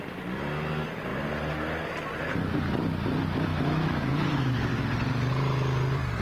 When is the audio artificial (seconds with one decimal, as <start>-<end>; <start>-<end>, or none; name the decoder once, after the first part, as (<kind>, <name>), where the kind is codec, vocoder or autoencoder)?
3.5-4.8 (autoencoder, DAC-VAE)